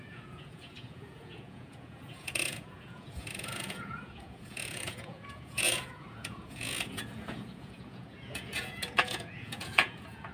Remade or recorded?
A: remade